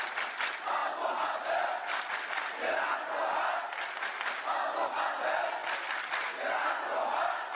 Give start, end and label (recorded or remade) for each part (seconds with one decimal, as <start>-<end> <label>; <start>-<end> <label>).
0.0-7.5 recorded